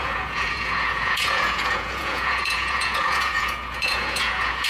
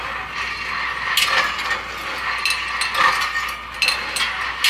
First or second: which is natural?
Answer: second